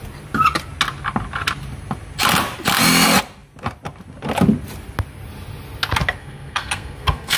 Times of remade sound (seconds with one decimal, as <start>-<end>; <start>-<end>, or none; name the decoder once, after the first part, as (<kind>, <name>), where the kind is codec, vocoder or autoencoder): 6.2-7.4 (codec, SNAC)